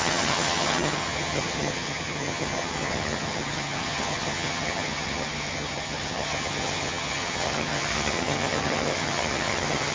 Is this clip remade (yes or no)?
yes